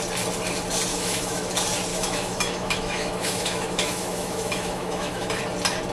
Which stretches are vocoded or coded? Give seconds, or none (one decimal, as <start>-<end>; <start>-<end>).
0.9-1.5; 1.9-5.4